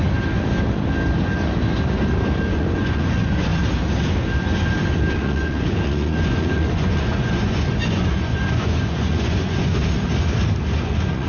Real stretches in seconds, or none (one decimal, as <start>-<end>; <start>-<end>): 0.0-2.5; 3.5-5.1; 9.8-10.8